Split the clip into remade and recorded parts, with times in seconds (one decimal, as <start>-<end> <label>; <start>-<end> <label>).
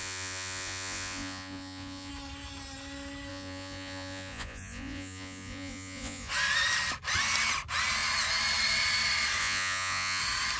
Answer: 0.0-2.1 remade; 2.1-3.3 recorded; 3.3-6.3 remade; 6.3-9.4 recorded; 9.4-10.2 remade; 10.2-10.6 recorded